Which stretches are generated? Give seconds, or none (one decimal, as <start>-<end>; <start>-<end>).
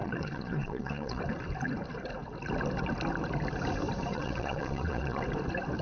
0.0-1.2; 4.1-5.2